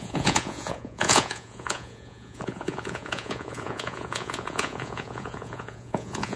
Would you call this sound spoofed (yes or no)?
yes